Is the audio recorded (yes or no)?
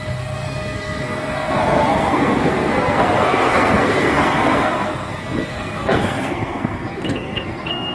no